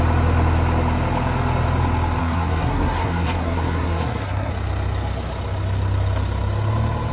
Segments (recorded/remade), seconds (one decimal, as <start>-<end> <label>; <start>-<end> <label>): 0.0-2.2 recorded; 2.2-4.5 remade; 4.5-7.1 recorded